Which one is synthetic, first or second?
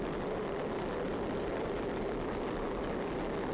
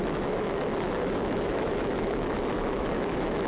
second